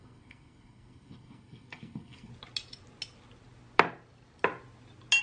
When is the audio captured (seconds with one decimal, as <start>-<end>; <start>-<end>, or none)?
2.3-5.2